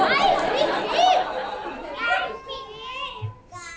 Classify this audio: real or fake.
real